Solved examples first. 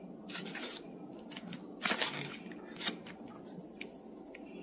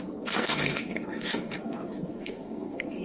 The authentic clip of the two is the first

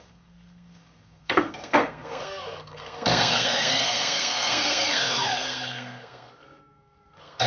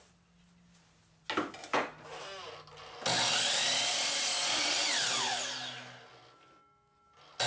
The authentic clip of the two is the second